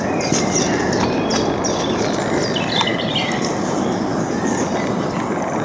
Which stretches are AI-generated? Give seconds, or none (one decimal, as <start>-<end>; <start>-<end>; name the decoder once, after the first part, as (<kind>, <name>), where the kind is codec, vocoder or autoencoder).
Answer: none